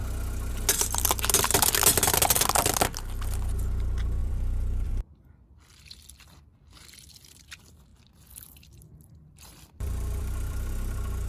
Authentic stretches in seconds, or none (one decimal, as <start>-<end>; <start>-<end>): 0.0-4.2; 4.9-7.9